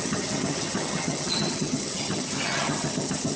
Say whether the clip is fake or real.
fake